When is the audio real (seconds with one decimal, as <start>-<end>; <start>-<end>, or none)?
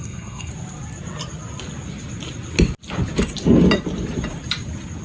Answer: 0.5-5.0